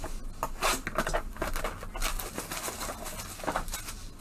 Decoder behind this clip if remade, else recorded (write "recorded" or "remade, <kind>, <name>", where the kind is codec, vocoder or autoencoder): recorded